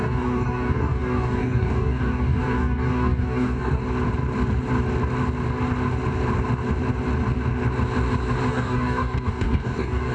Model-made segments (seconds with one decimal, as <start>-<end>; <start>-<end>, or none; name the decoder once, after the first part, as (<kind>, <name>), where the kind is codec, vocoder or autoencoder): 0.0-3.8 (codec, DAC); 8.5-10.1